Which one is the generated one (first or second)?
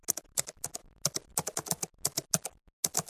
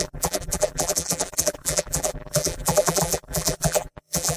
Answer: second